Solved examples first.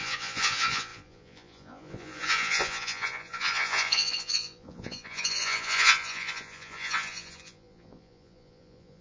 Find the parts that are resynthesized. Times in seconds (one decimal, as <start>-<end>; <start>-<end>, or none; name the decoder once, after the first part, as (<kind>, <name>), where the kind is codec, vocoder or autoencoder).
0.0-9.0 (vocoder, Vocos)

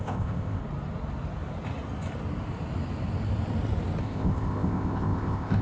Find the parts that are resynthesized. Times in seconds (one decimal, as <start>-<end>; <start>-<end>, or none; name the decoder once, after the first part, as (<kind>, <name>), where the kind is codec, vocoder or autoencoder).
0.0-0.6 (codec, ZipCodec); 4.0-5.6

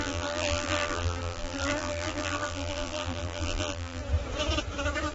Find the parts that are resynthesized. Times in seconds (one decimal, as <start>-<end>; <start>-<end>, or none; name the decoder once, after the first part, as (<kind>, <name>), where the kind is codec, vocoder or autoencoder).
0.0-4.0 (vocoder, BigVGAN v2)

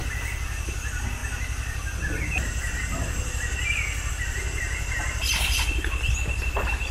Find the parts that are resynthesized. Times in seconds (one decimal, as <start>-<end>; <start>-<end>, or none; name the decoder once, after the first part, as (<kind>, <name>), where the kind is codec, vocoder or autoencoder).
none

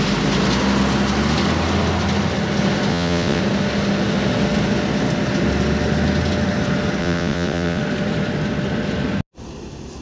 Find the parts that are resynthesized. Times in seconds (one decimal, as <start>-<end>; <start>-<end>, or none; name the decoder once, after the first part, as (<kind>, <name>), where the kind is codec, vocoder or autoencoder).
2.9-3.4 (vocoder, WaveNeXt); 7.0-7.8

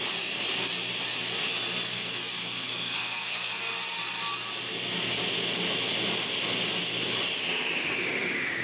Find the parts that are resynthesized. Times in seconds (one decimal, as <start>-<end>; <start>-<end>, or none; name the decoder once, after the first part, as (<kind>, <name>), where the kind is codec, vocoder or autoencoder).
1.9-3.6 (codec, SNAC)

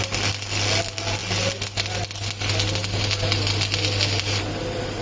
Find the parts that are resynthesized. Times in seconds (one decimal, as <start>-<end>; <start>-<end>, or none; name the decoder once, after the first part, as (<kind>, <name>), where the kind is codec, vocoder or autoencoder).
none

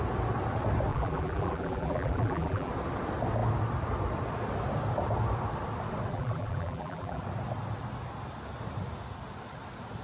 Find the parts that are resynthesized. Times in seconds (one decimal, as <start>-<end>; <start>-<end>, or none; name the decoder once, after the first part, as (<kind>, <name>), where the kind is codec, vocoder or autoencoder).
0.9-2.7 (vocoder, BigVGAN v2); 6.1-7.2